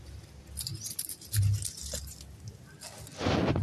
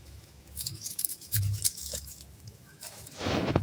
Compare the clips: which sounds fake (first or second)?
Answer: second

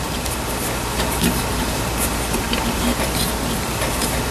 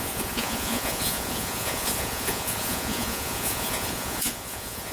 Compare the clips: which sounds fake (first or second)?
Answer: second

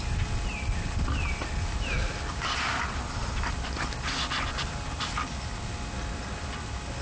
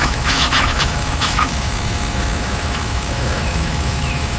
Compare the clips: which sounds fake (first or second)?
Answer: second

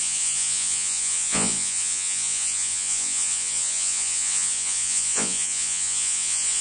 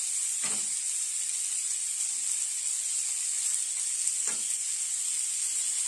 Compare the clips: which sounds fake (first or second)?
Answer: first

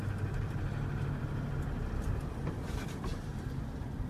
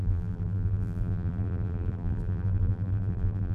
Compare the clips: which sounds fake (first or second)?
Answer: second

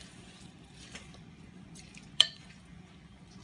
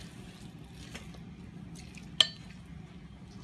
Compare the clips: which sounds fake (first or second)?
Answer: first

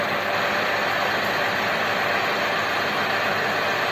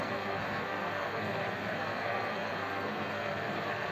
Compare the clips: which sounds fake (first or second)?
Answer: second